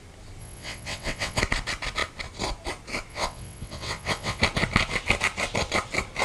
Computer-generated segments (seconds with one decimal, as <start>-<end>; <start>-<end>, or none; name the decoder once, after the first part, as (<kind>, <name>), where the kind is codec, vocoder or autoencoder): 0.4-1.4 (vocoder, WaveNeXt); 3.1-4.4